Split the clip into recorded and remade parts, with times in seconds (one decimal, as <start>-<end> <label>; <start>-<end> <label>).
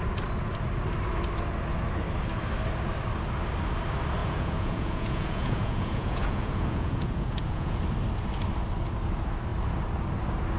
0.0-4.2 recorded; 4.2-7.8 remade; 7.8-10.6 recorded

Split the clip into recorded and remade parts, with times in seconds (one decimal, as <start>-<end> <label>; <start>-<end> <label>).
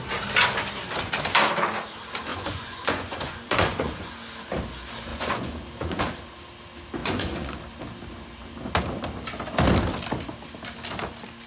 0.0-2.3 recorded; 2.3-4.1 remade; 4.1-5.1 recorded; 5.1-6.0 remade; 6.0-7.0 recorded; 7.0-7.6 remade; 7.6-11.5 recorded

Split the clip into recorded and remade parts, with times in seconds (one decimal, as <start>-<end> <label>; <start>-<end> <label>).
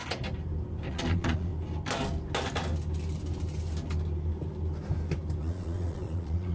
0.0-0.9 recorded; 0.9-1.5 remade; 1.5-5.4 recorded; 5.4-6.5 remade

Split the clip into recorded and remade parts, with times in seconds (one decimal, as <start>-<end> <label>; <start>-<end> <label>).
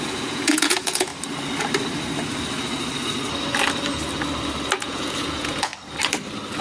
0.0-1.1 remade; 1.1-4.7 recorded; 4.7-5.7 remade; 5.7-6.6 recorded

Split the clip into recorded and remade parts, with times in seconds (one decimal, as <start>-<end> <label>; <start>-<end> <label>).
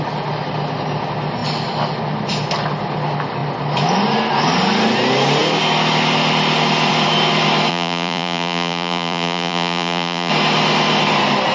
0.0-7.7 recorded; 7.7-10.3 remade; 10.3-11.5 recorded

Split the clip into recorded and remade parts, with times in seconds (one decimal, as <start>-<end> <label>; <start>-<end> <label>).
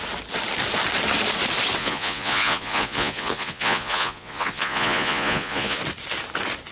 0.0-1.8 recorded; 1.8-5.8 remade; 5.8-6.7 recorded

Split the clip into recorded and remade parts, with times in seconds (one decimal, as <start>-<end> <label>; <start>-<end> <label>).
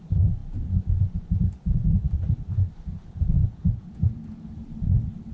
0.0-3.4 recorded; 3.4-4.4 remade; 4.4-5.3 recorded